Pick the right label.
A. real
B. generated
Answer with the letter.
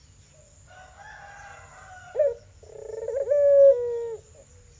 A